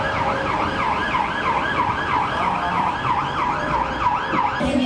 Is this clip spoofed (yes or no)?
yes